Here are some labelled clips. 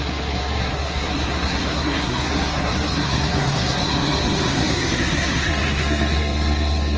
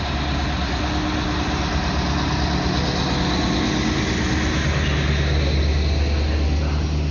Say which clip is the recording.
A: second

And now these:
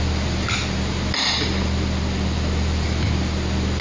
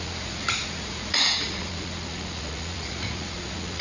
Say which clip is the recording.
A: first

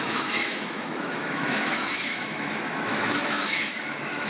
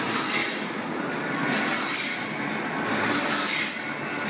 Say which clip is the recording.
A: second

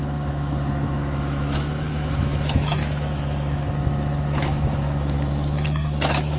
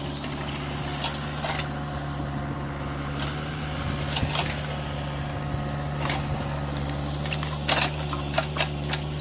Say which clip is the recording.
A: second